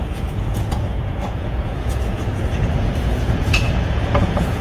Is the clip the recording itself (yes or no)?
no